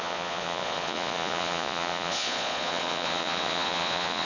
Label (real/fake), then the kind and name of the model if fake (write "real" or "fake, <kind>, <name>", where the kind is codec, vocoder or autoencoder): fake, vocoder, Vocos